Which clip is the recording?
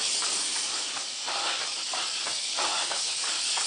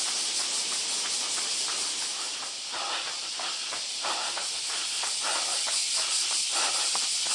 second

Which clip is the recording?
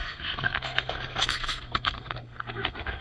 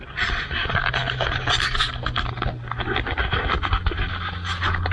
second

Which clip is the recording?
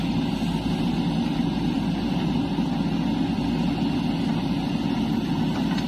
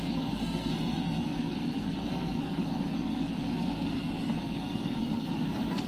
first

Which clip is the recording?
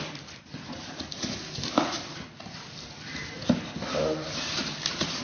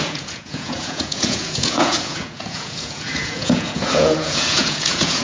first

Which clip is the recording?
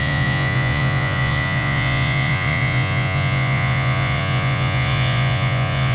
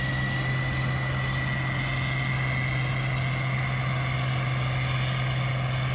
second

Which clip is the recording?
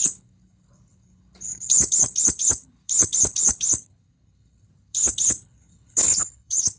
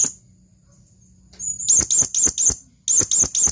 second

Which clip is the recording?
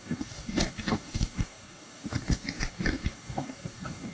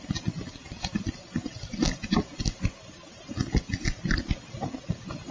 second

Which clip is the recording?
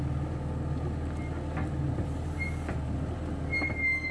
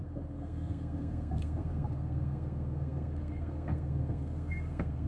first